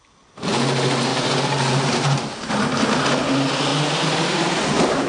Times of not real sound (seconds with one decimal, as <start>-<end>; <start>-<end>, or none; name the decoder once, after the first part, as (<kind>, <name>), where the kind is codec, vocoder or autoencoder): 1.1-2.9 (vocoder, BigVGAN v2); 3.7-5.1